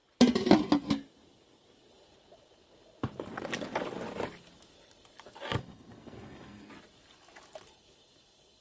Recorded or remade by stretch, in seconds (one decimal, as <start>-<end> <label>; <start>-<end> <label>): 0.0-5.6 recorded; 5.6-6.7 remade; 6.7-8.6 recorded